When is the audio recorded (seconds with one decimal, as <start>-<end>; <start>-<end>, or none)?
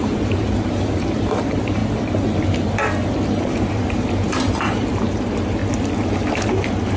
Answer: 1.8-3.4; 5.6-6.3